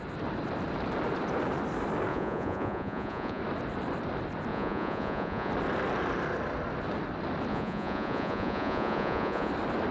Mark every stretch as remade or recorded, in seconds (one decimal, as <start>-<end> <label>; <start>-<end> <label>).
0.0-2.1 recorded; 2.1-3.4 remade; 3.4-4.5 recorded; 4.5-5.5 remade; 5.5-7.5 recorded; 7.5-9.5 remade; 9.5-9.9 recorded